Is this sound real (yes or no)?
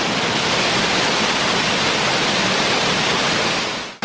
yes